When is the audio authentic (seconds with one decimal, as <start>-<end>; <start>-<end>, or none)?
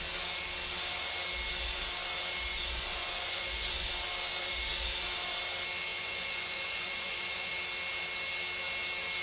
0.0-2.5; 3.9-5.9; 7.5-9.2